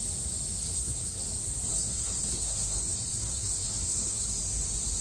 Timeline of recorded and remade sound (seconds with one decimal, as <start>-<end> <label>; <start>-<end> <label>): 0.0-0.6 recorded; 0.6-1.2 remade; 1.2-1.7 recorded; 1.7-4.3 remade; 4.3-5.0 recorded